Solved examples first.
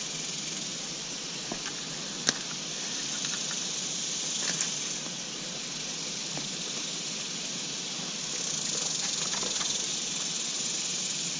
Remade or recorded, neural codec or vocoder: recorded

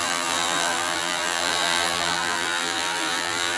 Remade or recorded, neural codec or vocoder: remade, vocoder, BigVGAN v2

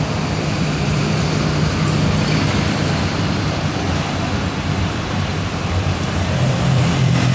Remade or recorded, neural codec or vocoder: remade, vocoder, BigVGAN v2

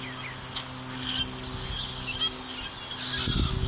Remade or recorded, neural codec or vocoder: recorded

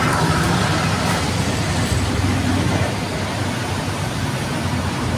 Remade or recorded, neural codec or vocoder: recorded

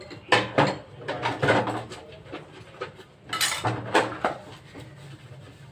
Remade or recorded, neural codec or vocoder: recorded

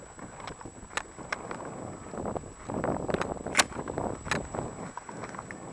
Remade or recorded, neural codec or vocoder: recorded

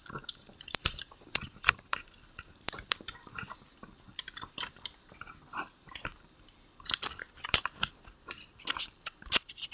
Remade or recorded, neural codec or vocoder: remade, vocoder, BigVGAN v2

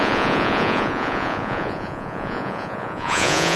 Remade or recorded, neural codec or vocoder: remade, vocoder, Vocos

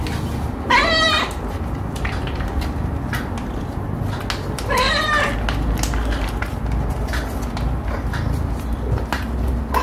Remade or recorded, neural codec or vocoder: recorded